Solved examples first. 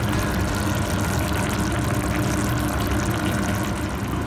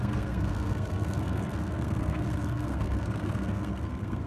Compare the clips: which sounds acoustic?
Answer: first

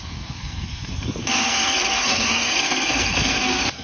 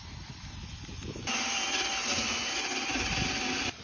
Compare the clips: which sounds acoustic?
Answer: second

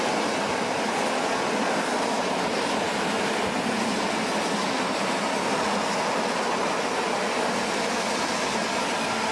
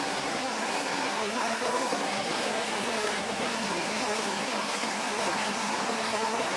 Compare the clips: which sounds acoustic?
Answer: first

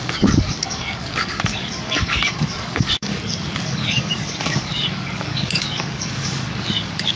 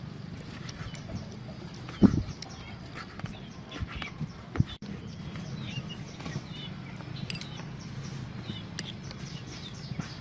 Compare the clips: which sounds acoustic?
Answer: second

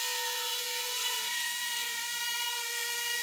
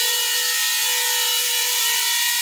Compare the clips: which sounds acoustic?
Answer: second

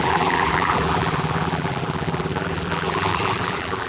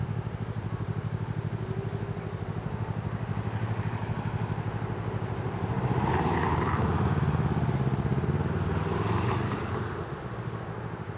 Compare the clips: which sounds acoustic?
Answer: second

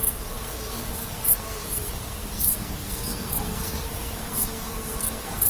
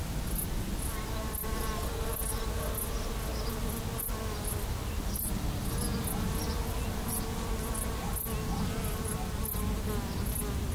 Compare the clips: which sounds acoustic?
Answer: second